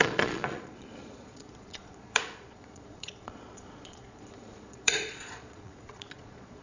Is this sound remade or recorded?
remade